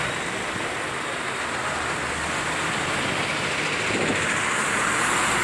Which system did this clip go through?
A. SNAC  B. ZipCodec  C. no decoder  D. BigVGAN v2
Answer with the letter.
C